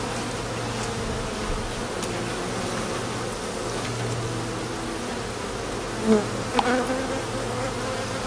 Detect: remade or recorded recorded